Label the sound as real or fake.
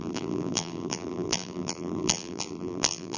fake